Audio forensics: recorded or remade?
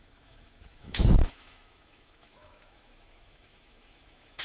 remade